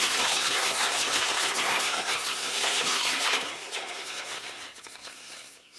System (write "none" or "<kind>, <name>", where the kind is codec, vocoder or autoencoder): codec, SNAC